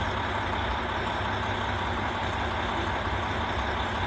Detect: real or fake real